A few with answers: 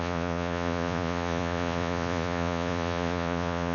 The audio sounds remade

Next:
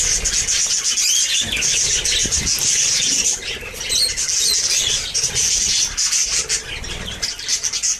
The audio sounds recorded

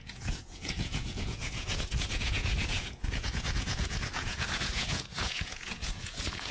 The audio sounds remade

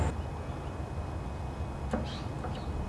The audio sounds recorded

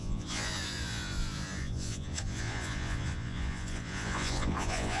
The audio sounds remade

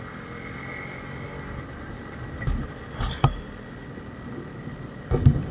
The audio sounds recorded